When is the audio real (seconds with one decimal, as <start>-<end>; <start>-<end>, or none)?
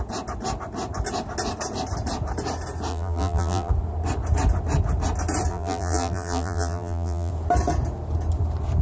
0.0-2.9; 3.7-5.5; 7.3-8.8